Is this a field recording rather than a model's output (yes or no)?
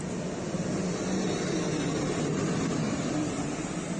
yes